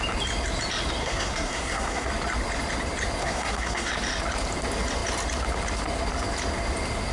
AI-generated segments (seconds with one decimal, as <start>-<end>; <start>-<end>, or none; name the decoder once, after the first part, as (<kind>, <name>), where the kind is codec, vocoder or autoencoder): 1.0-2.1 (codec, SNAC); 3.2-3.9